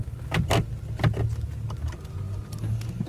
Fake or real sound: real